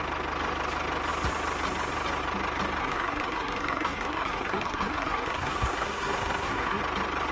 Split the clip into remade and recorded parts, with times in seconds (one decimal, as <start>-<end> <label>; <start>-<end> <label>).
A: 0.0-2.8 recorded; 2.8-6.8 remade; 6.8-7.3 recorded